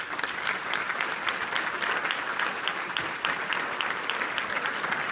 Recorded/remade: recorded